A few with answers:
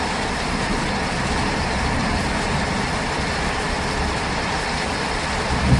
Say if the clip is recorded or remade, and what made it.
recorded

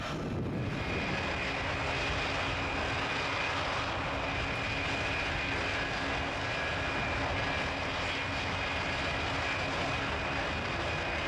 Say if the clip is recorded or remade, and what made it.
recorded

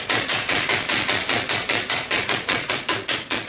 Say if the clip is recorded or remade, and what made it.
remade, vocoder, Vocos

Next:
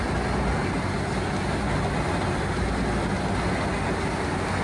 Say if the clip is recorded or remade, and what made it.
recorded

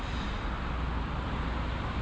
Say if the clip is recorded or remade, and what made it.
recorded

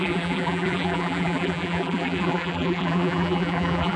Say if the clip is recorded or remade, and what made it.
remade, vocoder, BigVGAN v2